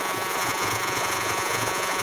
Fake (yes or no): yes